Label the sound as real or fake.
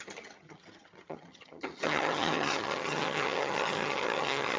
fake